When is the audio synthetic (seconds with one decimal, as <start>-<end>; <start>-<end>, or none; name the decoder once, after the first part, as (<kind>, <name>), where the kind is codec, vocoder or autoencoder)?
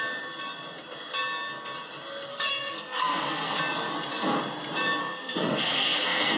2.3-3.6 (codec, SNAC); 5.0-6.4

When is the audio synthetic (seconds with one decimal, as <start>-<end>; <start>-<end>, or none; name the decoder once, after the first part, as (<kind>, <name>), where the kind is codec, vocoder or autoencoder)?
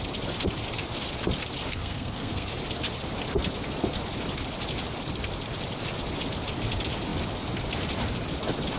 1.7-2.5 (codec, SNAC)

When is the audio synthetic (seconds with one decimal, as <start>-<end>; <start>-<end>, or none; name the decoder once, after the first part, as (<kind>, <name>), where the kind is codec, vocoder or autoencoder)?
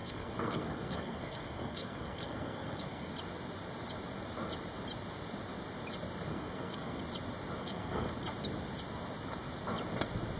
0.0-3.1 (codec, SNAC); 6.3-7.0; 7.6-8.1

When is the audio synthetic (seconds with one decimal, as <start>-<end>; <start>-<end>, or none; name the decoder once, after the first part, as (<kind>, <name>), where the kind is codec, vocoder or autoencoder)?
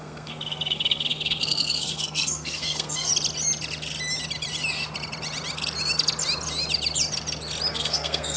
0.0-3.1 (codec, SNAC); 7.7-8.4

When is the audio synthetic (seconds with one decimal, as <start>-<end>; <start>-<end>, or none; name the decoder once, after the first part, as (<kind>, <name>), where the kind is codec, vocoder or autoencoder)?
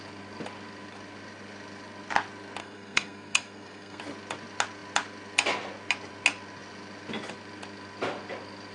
2.6-4.0 (codec, SNAC)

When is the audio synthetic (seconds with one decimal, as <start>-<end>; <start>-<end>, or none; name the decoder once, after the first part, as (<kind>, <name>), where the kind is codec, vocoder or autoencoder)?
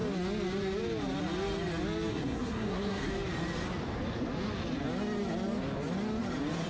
2.1-3.1 (codec, SNAC)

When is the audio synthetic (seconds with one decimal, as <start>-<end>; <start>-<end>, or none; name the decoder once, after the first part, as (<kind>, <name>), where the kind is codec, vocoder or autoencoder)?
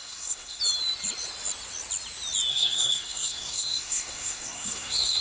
0.0-0.6 (codec, SNAC); 2.5-5.2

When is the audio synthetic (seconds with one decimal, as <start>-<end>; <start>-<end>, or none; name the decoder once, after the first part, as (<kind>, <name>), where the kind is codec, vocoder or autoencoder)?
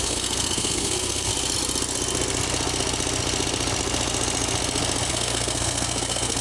0.0-1.3 (codec, SNAC); 5.1-6.4